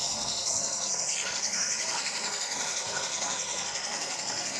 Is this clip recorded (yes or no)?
no